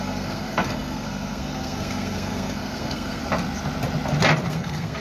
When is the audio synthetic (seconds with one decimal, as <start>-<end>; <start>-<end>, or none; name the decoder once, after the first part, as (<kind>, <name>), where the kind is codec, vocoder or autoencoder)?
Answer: 0.0-3.2 (codec, SNAC); 4.5-5.0